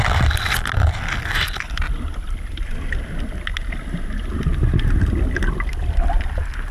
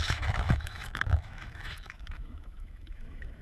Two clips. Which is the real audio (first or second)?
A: first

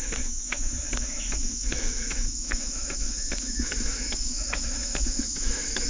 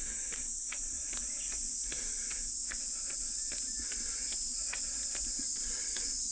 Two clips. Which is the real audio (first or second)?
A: second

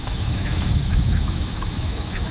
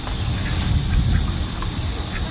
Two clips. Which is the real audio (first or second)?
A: second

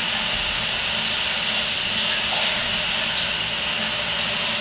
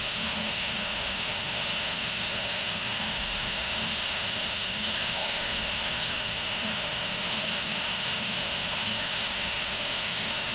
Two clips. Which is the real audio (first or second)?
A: first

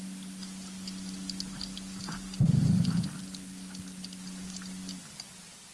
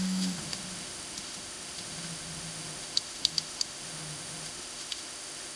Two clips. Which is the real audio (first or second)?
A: first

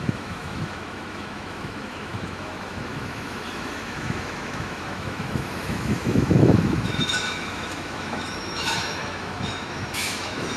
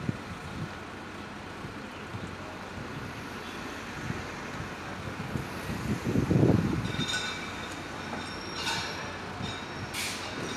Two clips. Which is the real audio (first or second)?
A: second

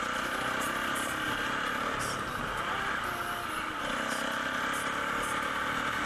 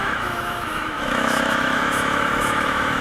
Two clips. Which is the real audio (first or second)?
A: first